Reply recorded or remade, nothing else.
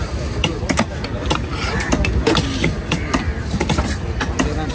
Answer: recorded